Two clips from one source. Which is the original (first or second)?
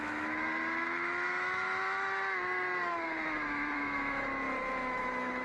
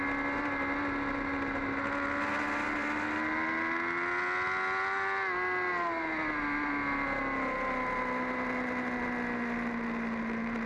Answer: second